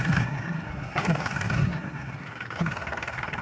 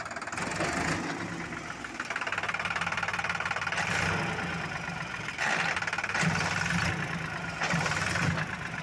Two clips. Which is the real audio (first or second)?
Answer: second